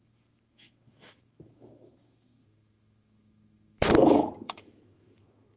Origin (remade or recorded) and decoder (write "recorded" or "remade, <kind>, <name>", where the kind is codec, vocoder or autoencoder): remade, autoencoder, DAC-VAE